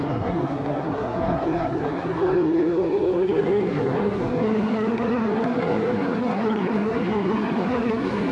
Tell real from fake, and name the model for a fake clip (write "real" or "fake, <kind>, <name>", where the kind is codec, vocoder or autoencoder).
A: fake, codec, SNAC